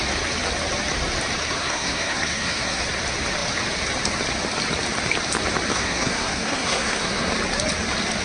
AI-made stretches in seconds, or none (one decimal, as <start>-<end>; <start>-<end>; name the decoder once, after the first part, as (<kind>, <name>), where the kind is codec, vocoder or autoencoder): 1.4-2.8 (codec, SNAC); 5.7-7.3